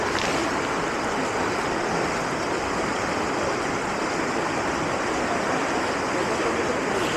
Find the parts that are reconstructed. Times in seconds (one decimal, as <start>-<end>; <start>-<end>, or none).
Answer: none